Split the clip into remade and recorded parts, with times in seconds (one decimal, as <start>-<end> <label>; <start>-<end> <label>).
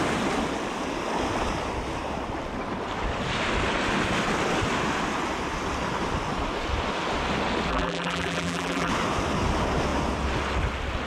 0.0-7.7 recorded; 7.7-8.9 remade; 8.9-11.1 recorded